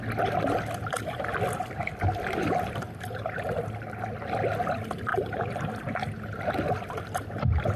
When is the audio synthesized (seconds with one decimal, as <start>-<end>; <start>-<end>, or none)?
2.8-3.6; 5.1-6.5